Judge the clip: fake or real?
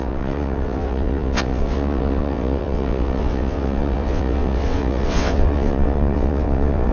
fake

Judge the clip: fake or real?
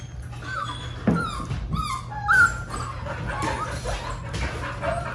real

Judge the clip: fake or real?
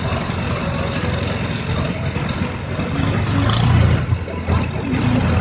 real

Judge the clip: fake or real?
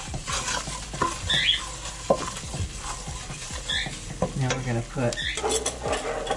real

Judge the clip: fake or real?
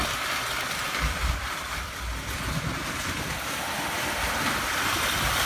fake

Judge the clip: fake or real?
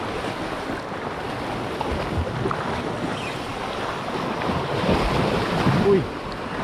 real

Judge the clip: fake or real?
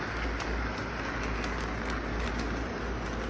real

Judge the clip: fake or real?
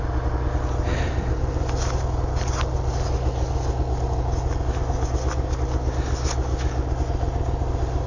real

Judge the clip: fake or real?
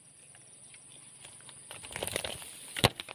real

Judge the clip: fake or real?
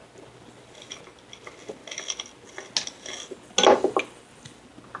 real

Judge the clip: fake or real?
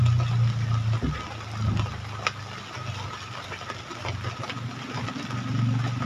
real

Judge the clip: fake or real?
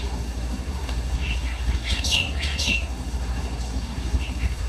fake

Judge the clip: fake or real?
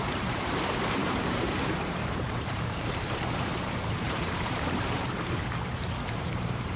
fake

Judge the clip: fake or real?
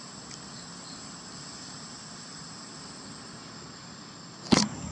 real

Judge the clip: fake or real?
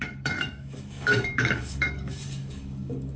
fake